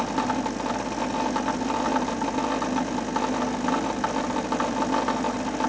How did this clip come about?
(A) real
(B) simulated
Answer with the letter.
A